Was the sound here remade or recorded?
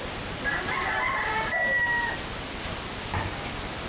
recorded